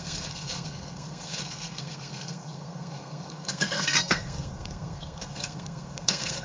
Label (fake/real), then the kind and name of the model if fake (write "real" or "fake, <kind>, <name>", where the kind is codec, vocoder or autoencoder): fake, codec, SNAC